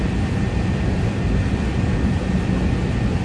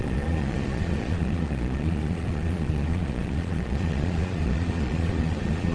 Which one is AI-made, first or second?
second